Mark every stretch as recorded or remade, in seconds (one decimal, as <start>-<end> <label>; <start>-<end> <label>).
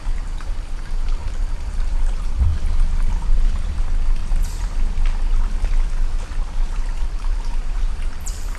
0.0-2.5 remade; 2.5-3.3 recorded; 3.3-4.2 remade; 4.2-7.0 recorded; 7.0-8.6 remade